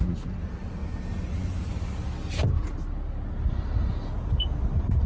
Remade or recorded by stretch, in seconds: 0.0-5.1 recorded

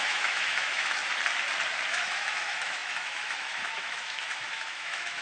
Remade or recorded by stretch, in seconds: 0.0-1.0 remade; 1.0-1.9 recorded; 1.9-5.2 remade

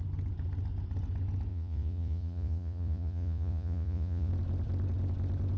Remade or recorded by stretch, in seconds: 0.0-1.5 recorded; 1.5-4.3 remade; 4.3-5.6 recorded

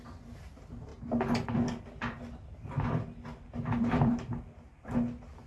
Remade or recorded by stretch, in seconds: 0.0-5.5 recorded

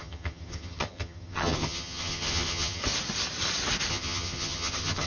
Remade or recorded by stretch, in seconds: 0.0-2.8 remade; 2.8-3.9 recorded; 3.9-5.1 remade

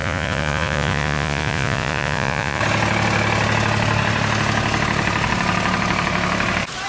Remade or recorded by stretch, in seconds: 0.0-2.6 remade; 2.6-6.9 recorded